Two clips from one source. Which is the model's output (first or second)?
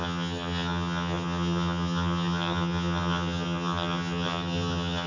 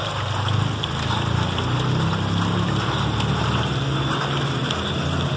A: first